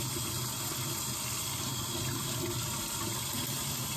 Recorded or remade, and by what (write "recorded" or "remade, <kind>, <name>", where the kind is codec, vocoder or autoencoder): recorded